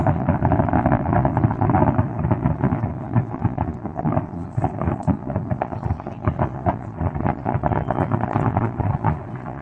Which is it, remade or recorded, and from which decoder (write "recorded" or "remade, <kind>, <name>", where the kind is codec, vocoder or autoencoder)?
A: remade, vocoder, Vocos